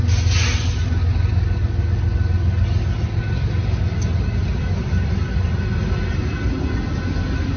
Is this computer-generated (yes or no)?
no